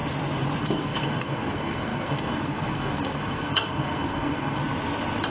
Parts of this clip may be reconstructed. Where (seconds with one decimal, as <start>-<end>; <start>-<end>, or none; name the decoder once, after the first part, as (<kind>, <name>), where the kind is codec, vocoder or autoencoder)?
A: 0.6-4.6 (codec, SNAC)